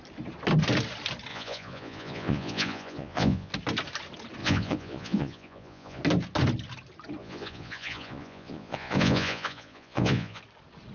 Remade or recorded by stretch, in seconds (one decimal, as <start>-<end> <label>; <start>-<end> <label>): 0.0-1.3 recorded; 1.3-3.5 remade; 3.5-4.4 recorded; 4.4-6.0 remade; 6.0-7.2 recorded; 7.2-10.4 remade; 10.4-10.9 recorded